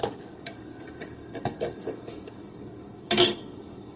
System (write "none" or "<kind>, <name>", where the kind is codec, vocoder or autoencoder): codec, DAC